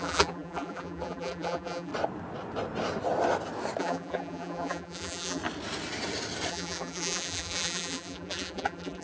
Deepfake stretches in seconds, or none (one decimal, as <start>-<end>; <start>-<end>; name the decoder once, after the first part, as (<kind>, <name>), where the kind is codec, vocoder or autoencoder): 0.0-1.9 (vocoder, BigVGAN v2); 3.8-5.4; 6.5-9.0